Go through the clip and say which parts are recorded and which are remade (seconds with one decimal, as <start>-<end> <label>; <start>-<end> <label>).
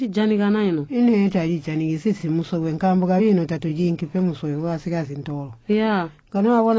0.0-6.8 recorded